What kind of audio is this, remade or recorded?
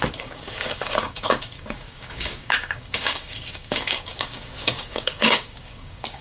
remade